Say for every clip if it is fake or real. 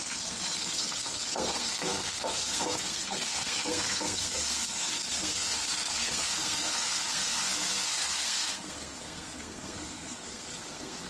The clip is fake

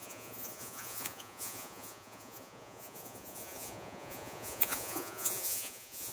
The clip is fake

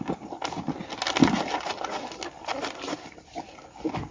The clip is real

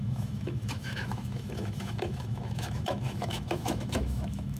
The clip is fake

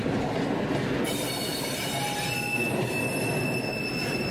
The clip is real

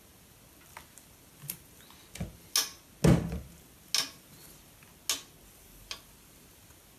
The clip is real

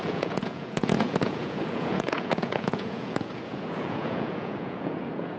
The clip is fake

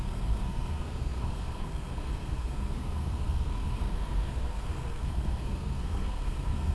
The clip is fake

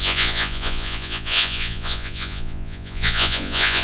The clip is fake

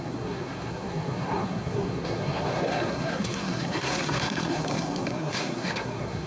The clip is fake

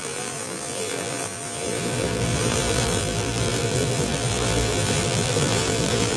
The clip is fake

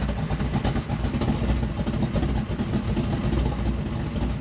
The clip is real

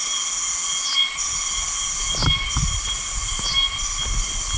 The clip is real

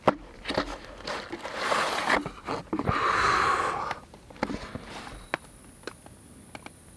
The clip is real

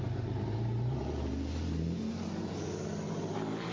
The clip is fake